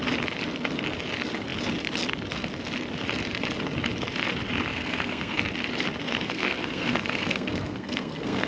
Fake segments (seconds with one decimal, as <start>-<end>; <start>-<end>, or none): 4.7-5.4; 6.0-8.5